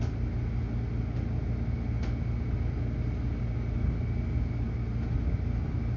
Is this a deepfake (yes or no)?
no